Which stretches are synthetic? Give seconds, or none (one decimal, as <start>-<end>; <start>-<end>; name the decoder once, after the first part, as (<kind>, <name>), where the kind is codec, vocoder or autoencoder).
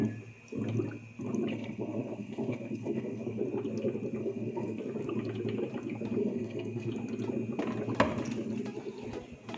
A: 1.5-3.4 (codec, SNAC); 4.2-4.8; 6.2-6.9